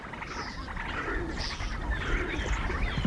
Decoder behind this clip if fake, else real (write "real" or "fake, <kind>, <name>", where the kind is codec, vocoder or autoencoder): real